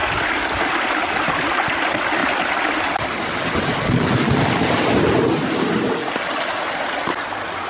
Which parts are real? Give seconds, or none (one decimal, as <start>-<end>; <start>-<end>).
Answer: 0.0-7.7